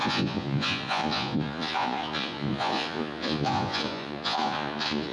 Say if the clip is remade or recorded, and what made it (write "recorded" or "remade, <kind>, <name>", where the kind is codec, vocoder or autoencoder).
remade, vocoder, Vocos